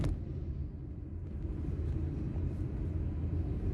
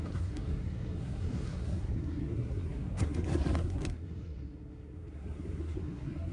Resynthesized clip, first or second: second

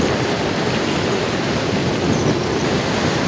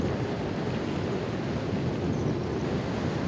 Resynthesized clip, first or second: first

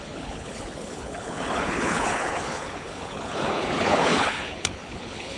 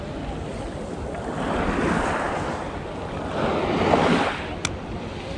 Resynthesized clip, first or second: first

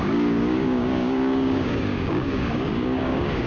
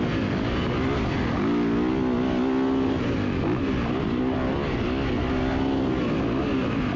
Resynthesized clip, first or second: first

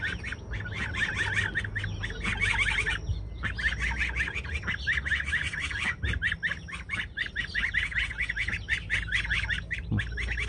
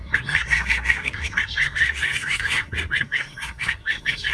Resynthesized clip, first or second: second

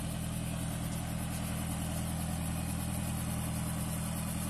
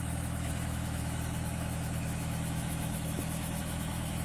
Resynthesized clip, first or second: second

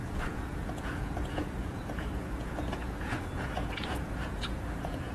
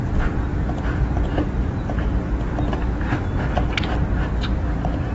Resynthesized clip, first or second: first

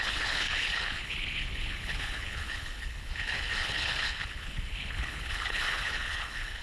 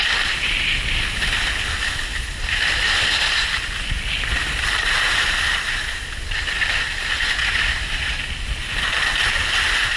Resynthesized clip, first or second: first